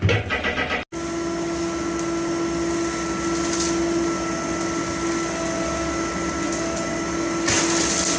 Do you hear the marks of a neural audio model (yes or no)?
no